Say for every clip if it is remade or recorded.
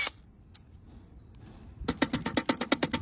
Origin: recorded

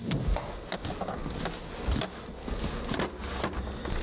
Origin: recorded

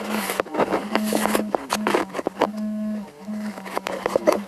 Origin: remade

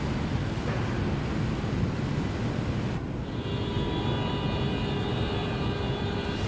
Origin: recorded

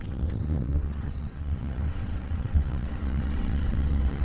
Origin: remade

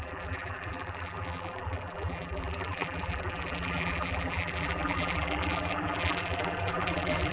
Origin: remade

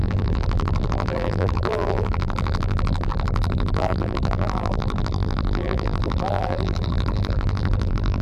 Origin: remade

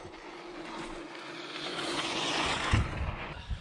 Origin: remade